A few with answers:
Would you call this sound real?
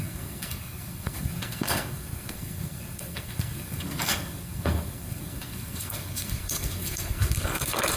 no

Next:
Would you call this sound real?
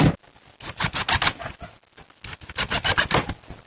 yes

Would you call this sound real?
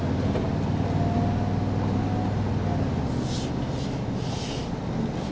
yes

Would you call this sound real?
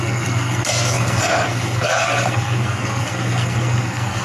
no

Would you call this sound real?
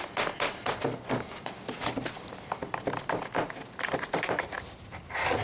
yes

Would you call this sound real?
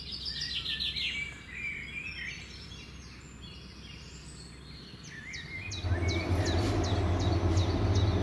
yes